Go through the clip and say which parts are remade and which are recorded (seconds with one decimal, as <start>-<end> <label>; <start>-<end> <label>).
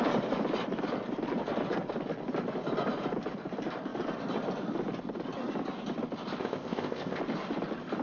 0.0-6.4 recorded; 6.4-7.2 remade; 7.2-8.0 recorded